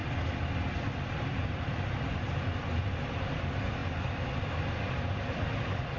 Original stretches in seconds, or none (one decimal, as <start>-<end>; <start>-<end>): 3.8-5.2